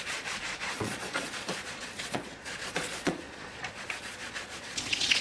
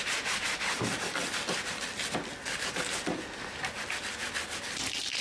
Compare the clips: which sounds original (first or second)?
second